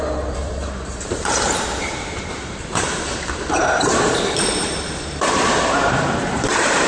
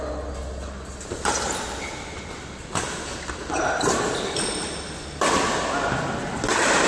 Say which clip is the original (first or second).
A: second